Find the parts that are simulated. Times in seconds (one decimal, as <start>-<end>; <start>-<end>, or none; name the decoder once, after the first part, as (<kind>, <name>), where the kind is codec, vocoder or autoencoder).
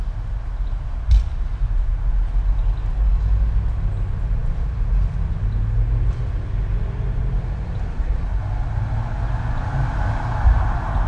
7.9-8.4 (codec, SNAC)